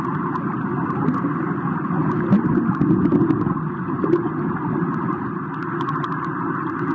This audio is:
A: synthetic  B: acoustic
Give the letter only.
B